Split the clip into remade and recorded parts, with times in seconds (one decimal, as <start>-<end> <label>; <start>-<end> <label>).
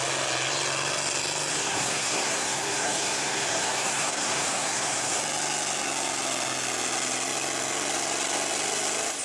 0.0-1.5 recorded; 1.5-5.2 remade; 5.2-9.2 recorded